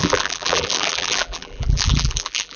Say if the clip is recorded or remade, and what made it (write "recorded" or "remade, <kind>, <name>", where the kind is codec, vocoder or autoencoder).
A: remade, vocoder, BigVGAN v2